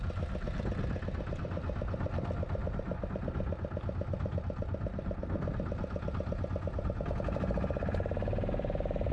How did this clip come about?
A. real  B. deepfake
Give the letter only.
A